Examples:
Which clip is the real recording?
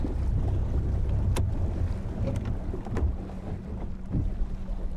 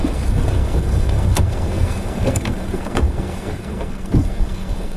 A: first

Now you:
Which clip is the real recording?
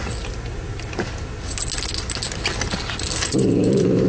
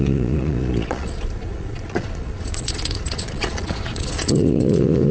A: first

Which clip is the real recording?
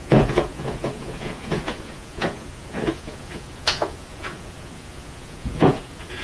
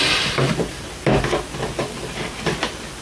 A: second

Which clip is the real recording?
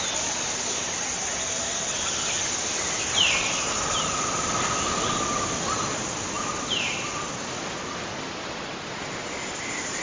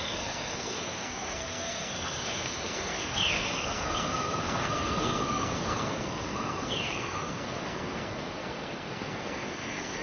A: first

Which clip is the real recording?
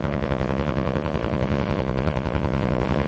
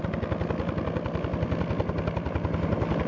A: second